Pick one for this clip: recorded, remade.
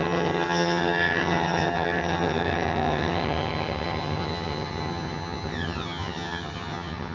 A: remade